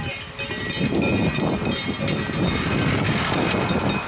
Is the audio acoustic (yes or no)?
yes